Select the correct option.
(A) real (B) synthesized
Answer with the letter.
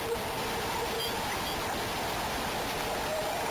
A